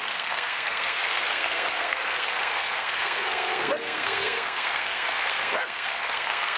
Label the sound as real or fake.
fake